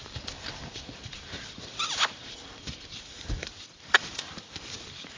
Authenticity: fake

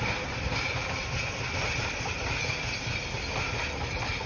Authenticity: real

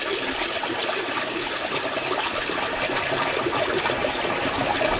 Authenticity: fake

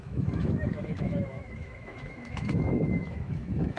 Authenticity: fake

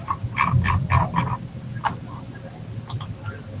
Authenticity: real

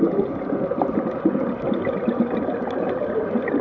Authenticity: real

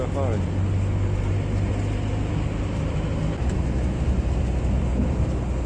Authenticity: real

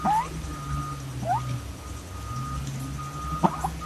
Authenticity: real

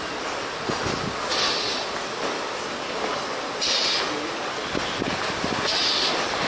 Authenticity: real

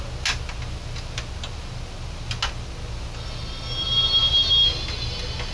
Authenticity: real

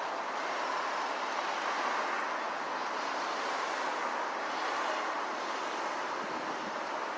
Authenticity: real